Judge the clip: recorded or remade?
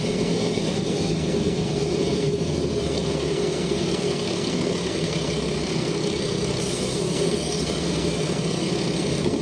remade